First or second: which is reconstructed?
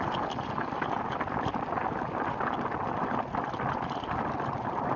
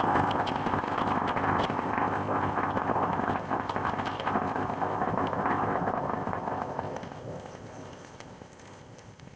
second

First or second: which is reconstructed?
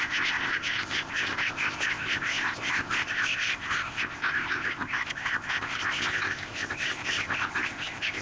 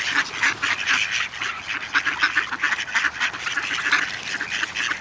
first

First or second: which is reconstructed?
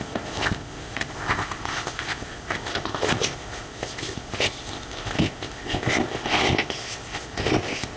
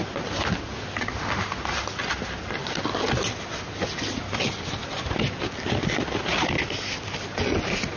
first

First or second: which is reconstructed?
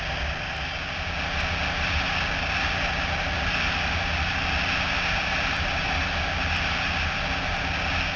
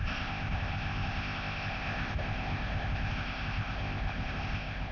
second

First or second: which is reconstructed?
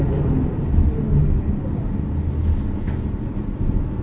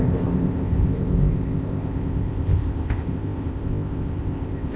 second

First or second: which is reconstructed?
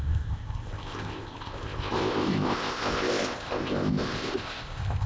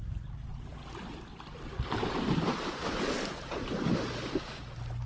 first